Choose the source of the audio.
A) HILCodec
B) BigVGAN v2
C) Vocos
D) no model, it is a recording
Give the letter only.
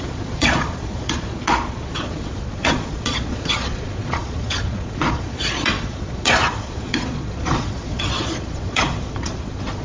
C